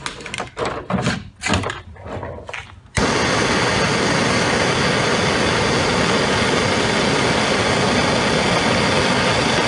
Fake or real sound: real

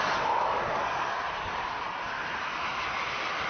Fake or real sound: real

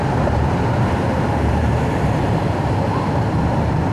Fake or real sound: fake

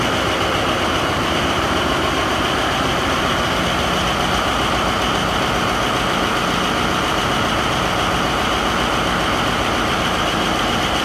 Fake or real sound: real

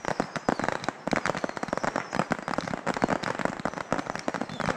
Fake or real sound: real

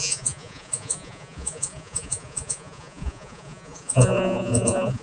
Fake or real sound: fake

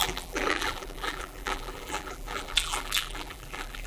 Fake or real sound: fake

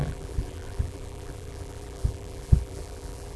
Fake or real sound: fake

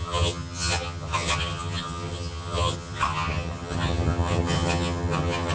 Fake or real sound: fake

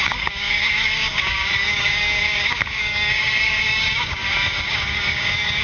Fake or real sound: fake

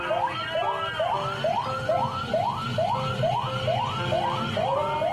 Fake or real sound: real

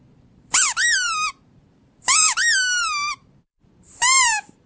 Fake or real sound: fake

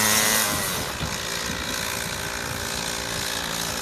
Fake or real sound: real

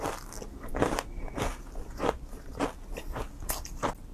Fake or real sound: real